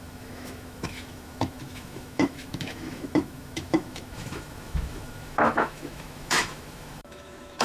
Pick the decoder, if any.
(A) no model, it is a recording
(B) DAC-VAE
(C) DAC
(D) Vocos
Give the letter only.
B